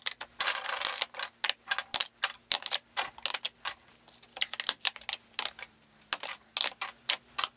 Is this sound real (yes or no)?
yes